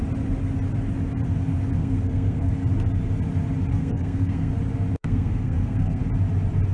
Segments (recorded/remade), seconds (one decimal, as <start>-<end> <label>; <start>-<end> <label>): 0.0-1.8 recorded; 1.8-2.5 remade; 2.5-3.7 recorded; 3.7-4.5 remade; 4.5-4.9 recorded; 4.9-6.0 remade; 6.0-6.7 recorded